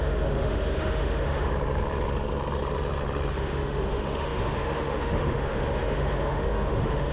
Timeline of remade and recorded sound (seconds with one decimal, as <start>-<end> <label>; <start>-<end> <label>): 0.0-1.5 remade; 1.5-3.3 recorded; 3.3-7.1 remade